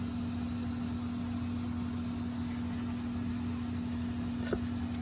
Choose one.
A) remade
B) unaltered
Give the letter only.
B